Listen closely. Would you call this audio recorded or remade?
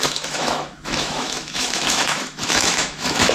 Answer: remade